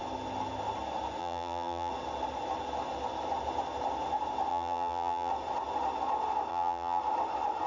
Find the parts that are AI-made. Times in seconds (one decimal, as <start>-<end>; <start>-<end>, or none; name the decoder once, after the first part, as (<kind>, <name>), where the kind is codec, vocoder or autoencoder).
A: 1.2-1.9 (vocoder, BigVGAN v2); 4.5-5.3; 6.5-7.0